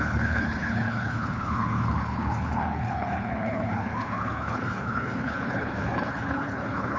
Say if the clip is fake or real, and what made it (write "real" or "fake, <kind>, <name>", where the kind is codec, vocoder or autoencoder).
fake, codec, HILCodec